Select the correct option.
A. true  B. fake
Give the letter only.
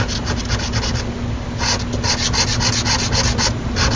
A